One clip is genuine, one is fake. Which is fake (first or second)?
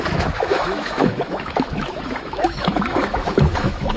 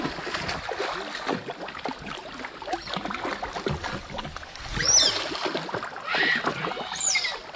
first